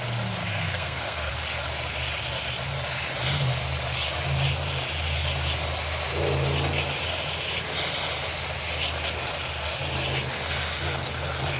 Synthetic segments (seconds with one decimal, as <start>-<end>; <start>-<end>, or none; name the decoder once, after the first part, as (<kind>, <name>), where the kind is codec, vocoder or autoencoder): 0.4-1.3 (codec, SNAC)